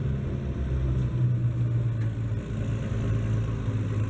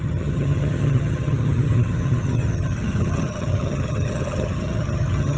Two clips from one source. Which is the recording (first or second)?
first